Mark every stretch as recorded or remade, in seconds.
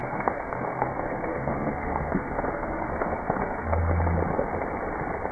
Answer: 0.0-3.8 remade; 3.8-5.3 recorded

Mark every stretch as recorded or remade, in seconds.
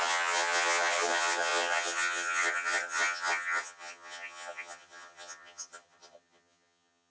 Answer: 0.0-7.1 remade